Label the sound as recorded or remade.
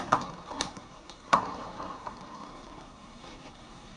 remade